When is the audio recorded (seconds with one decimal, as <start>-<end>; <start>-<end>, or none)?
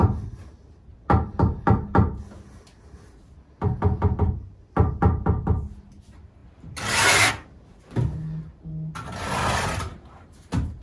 0.0-10.8